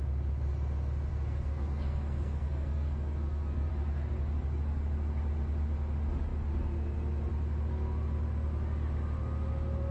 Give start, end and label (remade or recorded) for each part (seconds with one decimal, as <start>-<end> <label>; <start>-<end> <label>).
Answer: 0.0-1.1 recorded; 1.1-3.7 remade; 3.7-9.9 recorded